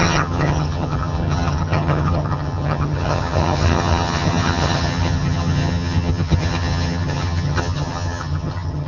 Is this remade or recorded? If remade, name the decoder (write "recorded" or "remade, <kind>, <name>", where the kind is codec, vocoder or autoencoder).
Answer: remade, vocoder, HiFi-GAN